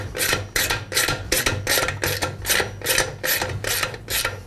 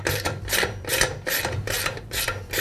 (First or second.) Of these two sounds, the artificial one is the second